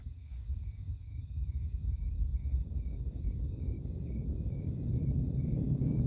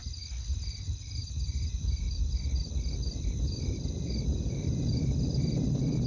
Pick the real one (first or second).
second